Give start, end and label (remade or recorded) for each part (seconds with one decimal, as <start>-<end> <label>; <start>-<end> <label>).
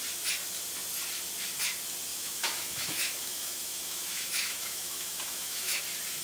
0.0-2.1 recorded; 2.1-5.8 remade; 5.8-6.2 recorded